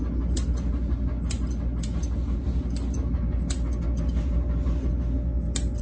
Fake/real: real